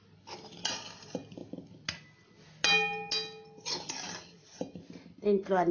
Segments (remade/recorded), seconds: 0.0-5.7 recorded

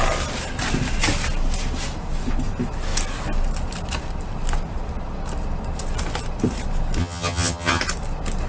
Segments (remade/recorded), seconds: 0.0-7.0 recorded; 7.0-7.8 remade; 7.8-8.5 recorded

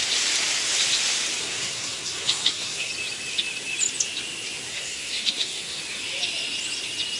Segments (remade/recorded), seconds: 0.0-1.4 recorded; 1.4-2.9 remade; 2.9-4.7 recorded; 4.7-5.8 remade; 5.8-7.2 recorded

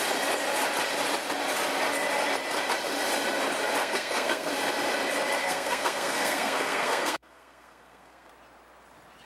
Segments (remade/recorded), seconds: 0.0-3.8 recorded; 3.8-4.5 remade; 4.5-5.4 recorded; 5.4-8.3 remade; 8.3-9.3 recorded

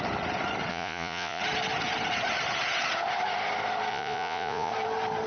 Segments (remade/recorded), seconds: 0.0-0.7 recorded; 0.7-1.4 remade; 1.4-3.9 recorded; 3.9-4.7 remade; 4.7-5.3 recorded